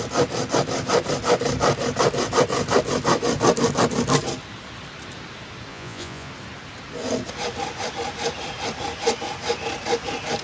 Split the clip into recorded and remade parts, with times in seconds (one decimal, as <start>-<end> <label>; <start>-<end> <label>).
0.0-5.7 recorded; 5.7-6.3 remade; 6.3-10.4 recorded